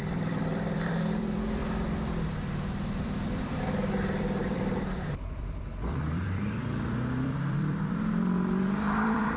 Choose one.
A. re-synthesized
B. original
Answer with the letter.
A